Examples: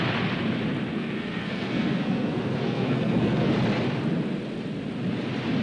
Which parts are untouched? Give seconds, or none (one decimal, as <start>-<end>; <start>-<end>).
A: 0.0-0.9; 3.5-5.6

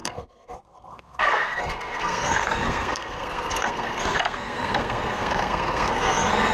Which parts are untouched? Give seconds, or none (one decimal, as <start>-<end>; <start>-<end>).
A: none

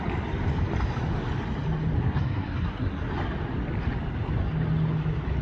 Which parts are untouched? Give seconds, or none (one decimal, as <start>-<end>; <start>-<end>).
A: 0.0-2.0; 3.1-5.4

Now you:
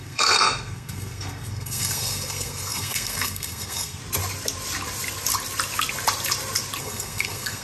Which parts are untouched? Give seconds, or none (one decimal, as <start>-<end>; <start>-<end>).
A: 4.0-6.8

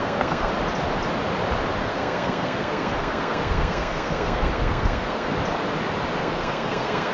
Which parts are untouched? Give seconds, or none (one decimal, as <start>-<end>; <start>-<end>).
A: 0.5-1.8; 5.3-6.2

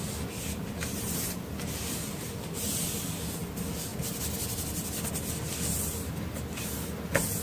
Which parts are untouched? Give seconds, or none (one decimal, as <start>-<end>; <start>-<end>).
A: 0.0-7.4

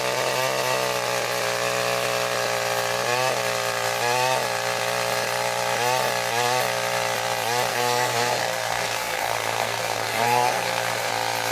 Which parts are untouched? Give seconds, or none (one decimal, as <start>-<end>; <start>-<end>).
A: 0.0-7.7; 11.1-11.5

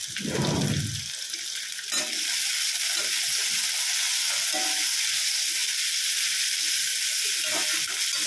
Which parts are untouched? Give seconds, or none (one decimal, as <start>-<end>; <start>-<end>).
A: 0.0-8.3